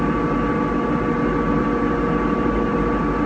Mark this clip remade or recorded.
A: recorded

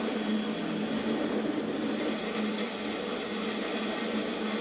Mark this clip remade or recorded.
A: recorded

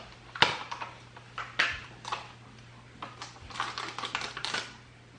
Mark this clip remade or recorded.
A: recorded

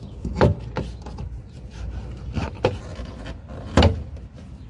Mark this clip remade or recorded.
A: recorded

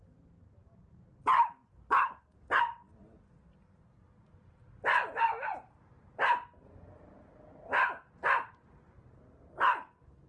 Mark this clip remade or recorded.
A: recorded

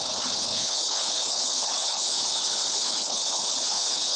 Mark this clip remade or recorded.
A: remade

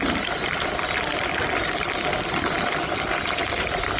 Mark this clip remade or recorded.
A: recorded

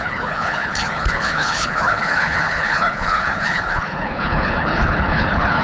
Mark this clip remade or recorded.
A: remade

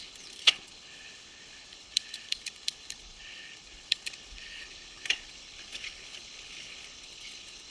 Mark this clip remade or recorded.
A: remade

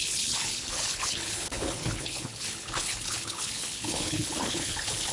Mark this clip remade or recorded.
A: remade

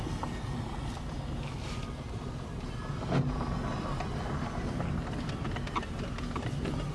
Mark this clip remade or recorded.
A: recorded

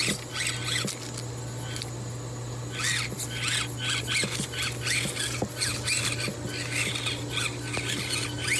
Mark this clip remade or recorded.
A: recorded